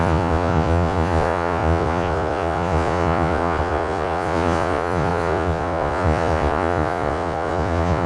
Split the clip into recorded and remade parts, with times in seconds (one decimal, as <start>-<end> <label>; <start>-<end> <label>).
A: 0.0-8.1 remade